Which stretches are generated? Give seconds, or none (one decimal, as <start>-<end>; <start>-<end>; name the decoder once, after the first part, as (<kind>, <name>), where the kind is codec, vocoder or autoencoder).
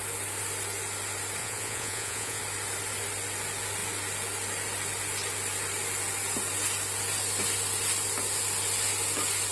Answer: 1.4-2.4 (vocoder, Vocos)